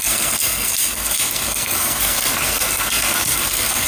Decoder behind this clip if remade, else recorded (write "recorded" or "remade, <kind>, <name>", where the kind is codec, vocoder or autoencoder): remade, codec, SNAC